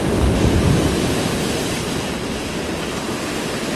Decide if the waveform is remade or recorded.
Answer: recorded